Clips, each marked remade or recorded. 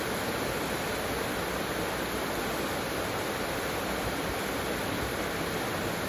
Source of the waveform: recorded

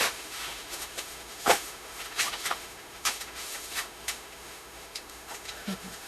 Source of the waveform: remade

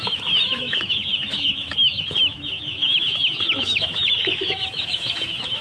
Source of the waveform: remade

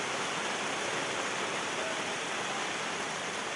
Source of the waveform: recorded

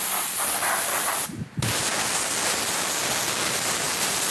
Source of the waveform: recorded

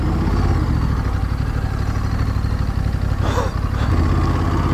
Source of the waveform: recorded